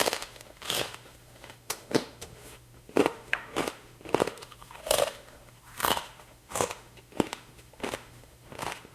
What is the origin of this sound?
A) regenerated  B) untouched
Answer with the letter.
A